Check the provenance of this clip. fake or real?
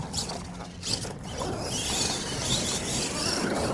real